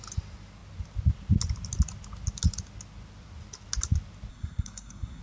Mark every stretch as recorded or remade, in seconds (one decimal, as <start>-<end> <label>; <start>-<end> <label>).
0.0-4.3 recorded; 4.3-5.2 remade